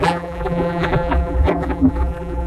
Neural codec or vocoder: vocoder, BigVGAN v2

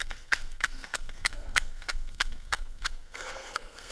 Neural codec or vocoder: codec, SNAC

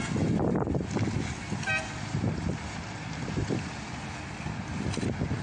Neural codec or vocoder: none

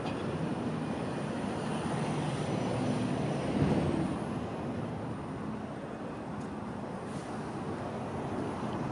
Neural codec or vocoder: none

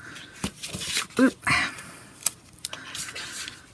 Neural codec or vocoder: none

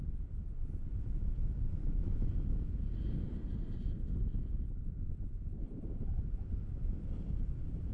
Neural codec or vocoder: none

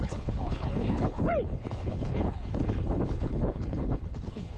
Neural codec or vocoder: codec, HILCodec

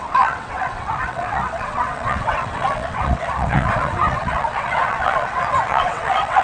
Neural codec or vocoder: vocoder, WaveNeXt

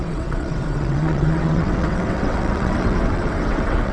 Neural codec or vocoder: vocoder, WaveNeXt